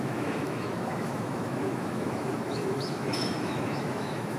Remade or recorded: remade